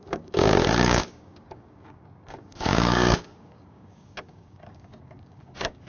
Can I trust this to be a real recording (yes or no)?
no